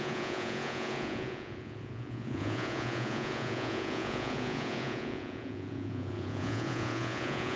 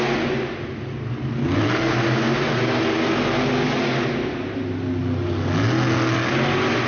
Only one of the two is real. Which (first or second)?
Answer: second